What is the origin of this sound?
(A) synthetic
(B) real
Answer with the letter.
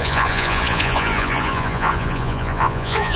A